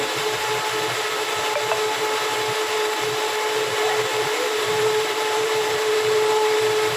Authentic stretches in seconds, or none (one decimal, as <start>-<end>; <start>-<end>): 0.0-4.1